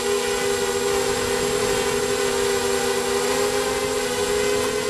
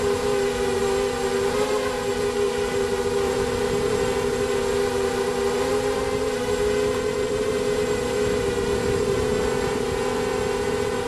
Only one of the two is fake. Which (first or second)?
second